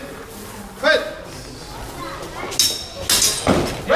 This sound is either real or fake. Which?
real